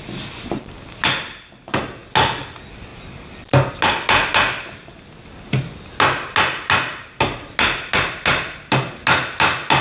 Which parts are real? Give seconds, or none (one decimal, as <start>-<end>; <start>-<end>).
0.0-9.8